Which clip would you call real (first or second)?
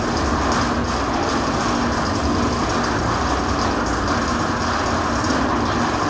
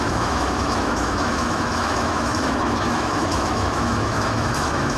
first